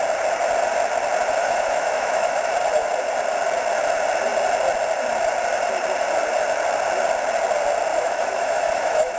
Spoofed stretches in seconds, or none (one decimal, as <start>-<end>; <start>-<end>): 1.4-2.5; 7.9-9.2